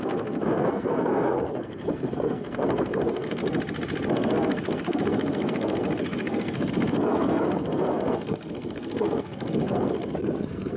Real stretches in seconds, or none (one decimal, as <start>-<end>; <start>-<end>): 3.4-4.1